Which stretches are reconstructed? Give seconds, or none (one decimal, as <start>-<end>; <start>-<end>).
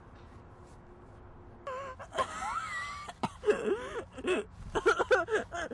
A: none